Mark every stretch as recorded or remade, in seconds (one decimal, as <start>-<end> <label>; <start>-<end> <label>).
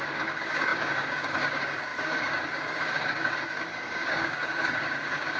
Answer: 0.0-5.4 remade